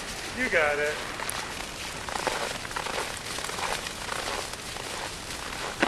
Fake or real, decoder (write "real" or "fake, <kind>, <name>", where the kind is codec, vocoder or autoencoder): real